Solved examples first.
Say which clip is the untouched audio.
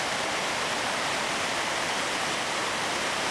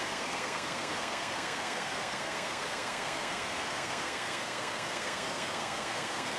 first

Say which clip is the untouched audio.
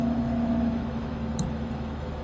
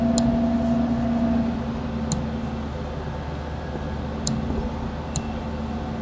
second